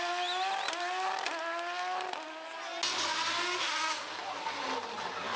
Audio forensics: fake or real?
real